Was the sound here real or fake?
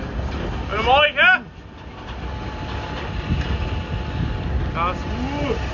real